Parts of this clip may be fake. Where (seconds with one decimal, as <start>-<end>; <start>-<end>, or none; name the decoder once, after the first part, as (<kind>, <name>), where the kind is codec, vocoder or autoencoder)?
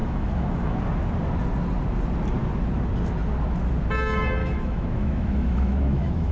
0.0-0.8 (autoencoder, DAC-VAE); 4.4-6.3